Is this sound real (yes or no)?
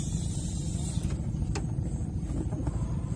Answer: yes